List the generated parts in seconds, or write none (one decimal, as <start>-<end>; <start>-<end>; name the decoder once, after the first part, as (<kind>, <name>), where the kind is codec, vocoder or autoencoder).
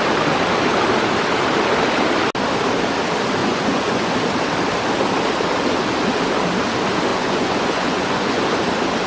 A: 3.4-4.1 (vocoder, Vocos); 7.1-8.4